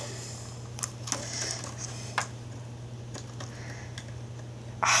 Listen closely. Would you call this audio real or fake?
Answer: real